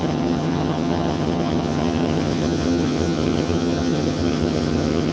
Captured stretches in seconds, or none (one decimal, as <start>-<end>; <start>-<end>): none